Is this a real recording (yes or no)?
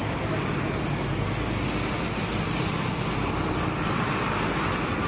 yes